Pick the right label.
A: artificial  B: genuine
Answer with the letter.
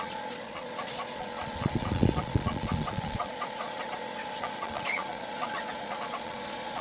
A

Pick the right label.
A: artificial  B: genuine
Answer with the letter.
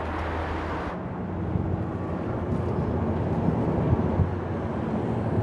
B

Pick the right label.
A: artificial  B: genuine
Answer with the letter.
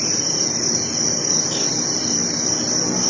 B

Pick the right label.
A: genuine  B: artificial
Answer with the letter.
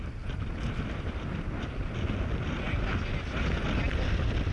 A